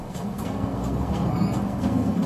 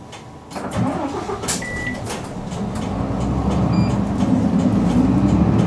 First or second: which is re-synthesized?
first